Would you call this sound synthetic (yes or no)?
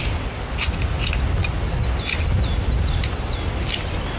no